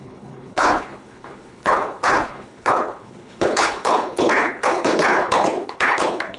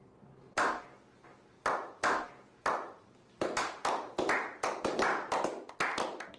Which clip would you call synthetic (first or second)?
first